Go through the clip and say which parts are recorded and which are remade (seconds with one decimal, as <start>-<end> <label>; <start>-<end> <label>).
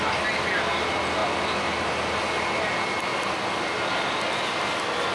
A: 0.0-5.1 recorded